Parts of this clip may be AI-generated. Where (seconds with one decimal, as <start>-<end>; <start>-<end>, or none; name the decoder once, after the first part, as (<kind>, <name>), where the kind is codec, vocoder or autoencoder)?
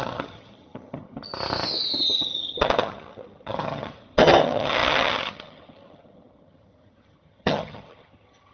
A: 0.0-1.3 (vocoder, HiFi-GAN); 2.0-8.5